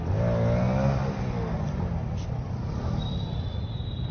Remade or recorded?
recorded